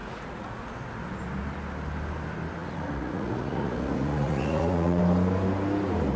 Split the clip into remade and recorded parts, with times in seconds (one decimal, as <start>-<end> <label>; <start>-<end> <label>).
0.0-0.6 remade; 0.6-2.6 recorded; 2.6-5.0 remade; 5.0-6.2 recorded